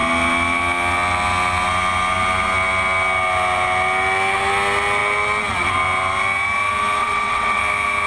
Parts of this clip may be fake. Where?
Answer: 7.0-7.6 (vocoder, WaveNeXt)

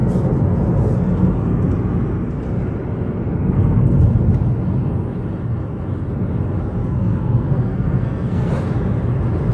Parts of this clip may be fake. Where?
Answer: 3.4-4.0 (codec, SNAC); 6.8-8.5